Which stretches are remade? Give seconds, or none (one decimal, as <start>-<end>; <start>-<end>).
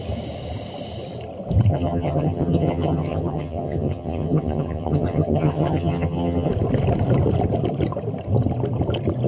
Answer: 1.7-6.5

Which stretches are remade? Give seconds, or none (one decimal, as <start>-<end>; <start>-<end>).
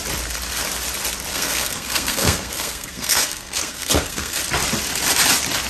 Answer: 1.3-4.4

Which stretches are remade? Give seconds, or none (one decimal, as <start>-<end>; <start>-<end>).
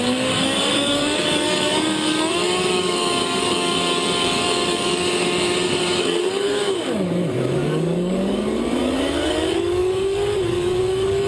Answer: 0.0-11.3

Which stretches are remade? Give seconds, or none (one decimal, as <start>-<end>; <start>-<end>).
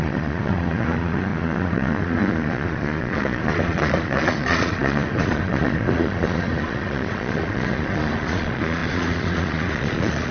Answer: 0.0-10.3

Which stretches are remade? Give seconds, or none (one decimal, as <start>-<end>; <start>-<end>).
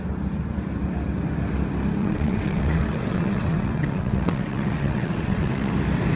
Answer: 2.0-5.7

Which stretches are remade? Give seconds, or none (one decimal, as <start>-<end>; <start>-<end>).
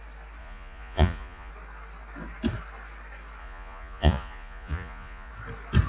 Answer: 0.4-1.5; 3.4-5.3